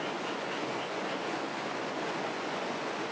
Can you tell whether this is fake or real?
fake